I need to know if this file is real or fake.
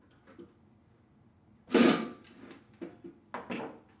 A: real